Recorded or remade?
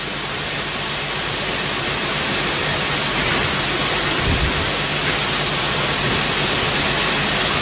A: recorded